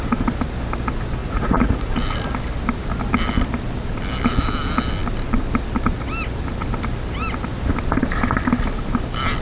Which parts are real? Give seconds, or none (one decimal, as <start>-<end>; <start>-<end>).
0.0-1.2; 1.9-9.4